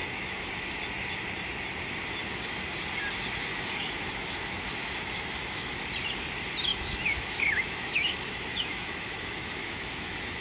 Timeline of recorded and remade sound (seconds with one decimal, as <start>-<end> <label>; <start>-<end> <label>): 0.0-0.5 remade; 0.5-3.5 recorded; 3.5-5.8 remade; 5.8-6.7 recorded; 6.7-10.4 remade